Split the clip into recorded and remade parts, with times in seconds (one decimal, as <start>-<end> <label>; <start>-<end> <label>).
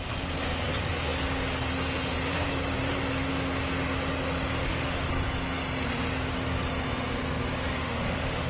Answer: 0.0-4.6 recorded; 4.6-5.1 remade; 5.1-7.7 recorded; 7.7-8.5 remade